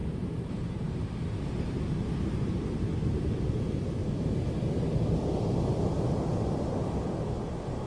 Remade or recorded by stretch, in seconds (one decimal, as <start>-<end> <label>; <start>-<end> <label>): 0.0-3.6 remade; 3.6-4.0 recorded; 4.0-5.0 remade; 5.0-7.9 recorded